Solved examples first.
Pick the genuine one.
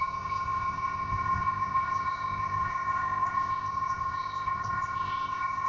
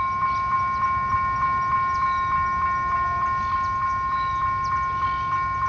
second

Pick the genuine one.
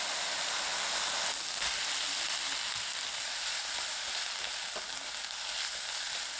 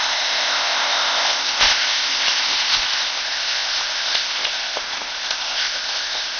first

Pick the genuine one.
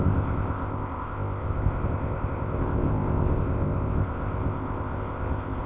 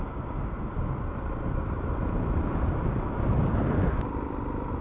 second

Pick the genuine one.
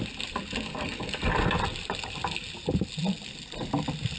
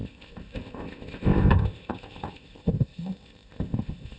first